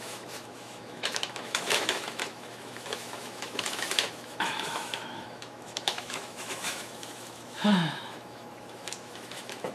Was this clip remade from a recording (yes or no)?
yes